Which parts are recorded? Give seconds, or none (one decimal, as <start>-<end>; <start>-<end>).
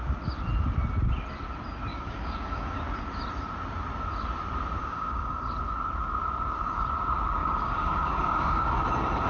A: 0.0-1.9; 2.8-4.8; 5.4-7.4; 8.9-9.3